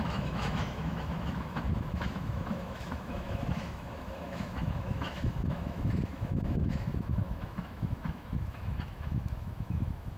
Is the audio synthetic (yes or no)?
yes